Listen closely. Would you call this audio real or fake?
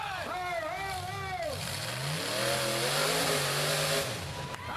real